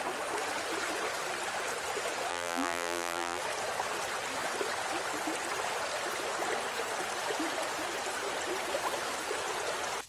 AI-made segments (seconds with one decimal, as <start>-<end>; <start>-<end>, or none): 2.3-3.4

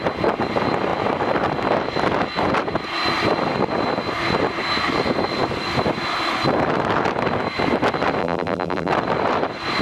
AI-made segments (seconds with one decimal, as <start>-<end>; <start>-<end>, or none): 8.2-8.9

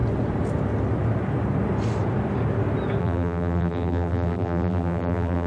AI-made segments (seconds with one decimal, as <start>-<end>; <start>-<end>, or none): 3.0-5.5